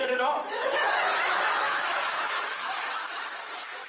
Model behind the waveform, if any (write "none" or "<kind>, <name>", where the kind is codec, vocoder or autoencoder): autoencoder, DAC-VAE